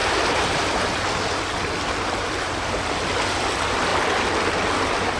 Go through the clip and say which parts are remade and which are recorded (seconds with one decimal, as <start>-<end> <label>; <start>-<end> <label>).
0.0-5.2 recorded